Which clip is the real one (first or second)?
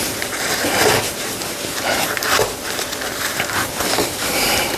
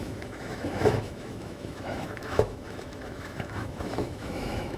first